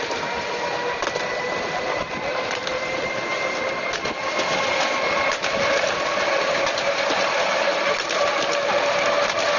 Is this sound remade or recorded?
recorded